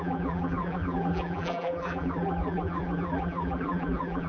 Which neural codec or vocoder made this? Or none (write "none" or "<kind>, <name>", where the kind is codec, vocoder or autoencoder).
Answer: vocoder, BigVGAN v2